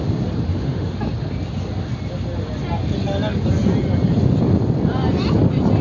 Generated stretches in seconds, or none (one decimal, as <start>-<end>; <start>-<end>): 0.5-1.0